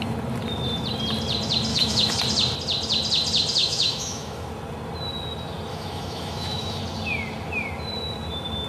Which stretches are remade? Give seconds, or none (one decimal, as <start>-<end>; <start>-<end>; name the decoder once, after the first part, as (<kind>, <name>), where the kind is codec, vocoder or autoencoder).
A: 1.7-2.2 (autoencoder, DAC-VAE); 3.6-4.5; 5.7-6.8